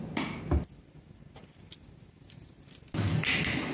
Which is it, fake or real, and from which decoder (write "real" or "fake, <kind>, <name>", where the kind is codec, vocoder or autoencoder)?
real